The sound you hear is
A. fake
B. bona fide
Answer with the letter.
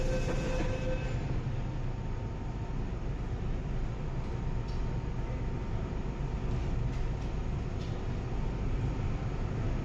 B